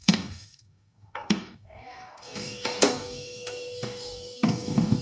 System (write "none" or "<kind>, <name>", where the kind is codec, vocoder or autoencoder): codec, DAC